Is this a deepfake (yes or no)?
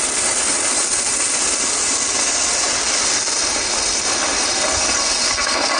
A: no